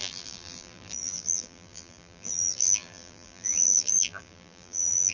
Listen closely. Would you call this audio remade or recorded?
remade